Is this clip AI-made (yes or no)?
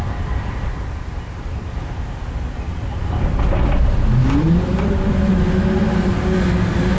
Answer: no